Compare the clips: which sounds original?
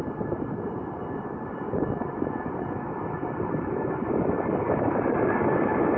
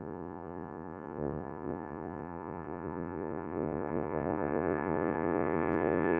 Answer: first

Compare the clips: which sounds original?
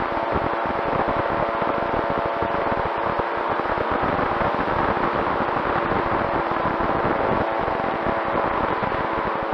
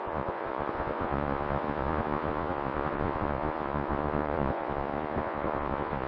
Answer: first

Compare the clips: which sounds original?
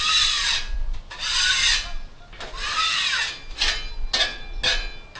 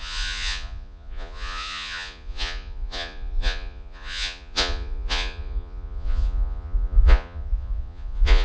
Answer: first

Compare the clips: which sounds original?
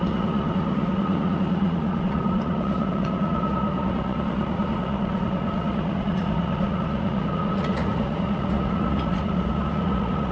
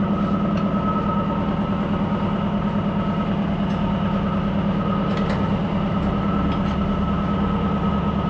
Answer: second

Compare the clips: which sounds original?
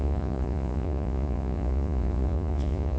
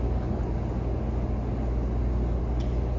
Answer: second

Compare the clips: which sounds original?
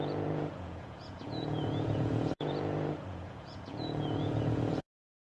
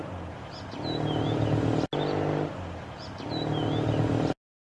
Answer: second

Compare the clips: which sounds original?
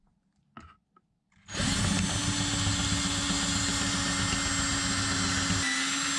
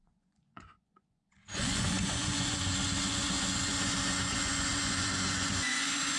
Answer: first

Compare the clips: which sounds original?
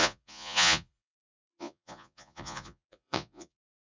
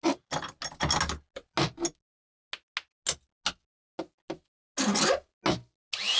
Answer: second